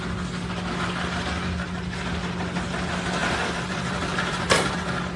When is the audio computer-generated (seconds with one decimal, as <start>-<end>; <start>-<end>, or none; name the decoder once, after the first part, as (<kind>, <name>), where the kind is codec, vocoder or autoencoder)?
3.2-4.7 (vocoder, BigVGAN v2)